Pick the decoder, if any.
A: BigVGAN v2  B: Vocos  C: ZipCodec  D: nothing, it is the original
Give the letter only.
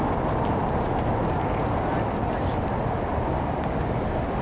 D